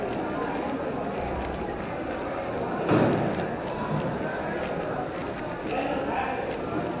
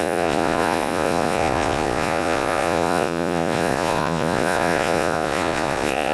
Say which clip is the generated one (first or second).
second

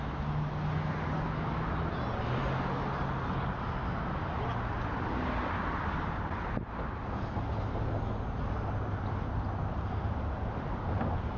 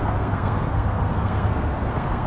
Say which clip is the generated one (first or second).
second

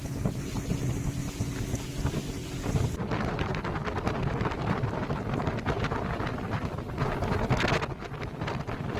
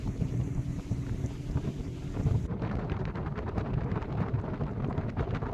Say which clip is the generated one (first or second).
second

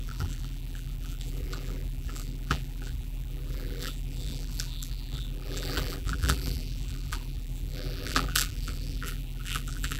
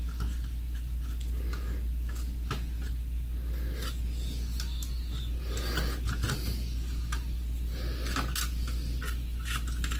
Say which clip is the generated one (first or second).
first